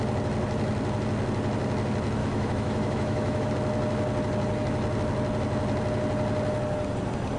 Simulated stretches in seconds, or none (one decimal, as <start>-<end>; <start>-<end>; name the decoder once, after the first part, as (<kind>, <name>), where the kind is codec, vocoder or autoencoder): 2.2-3.5 (autoencoder, DAC-VAE)